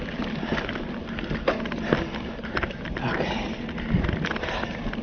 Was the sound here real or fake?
real